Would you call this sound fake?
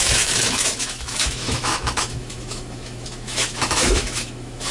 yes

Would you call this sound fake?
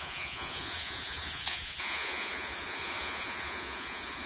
yes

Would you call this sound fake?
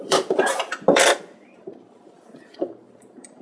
yes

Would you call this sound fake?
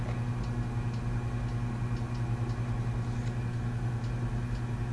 no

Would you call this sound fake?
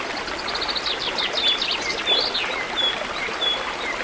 no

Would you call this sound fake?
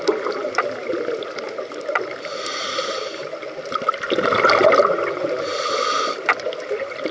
no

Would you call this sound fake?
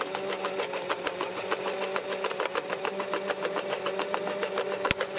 no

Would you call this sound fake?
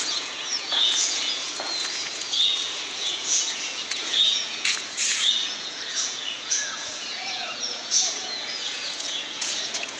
yes